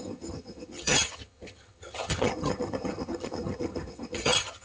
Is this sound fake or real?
fake